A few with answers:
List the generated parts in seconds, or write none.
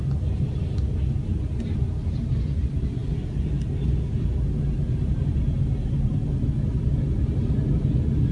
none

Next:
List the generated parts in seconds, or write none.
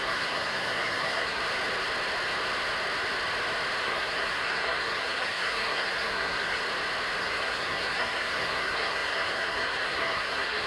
0.0-1.4 (codec, SNAC); 3.8-6.6; 7.2-10.7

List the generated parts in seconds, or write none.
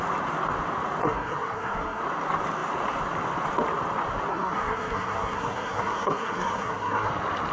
1.0-2.0 (codec, SNAC); 4.3-7.1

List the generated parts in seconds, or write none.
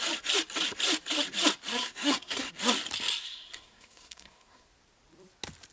1.7-2.5 (codec, SNAC); 3.2-4.7